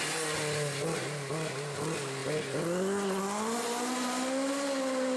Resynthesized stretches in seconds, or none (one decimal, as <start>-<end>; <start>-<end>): none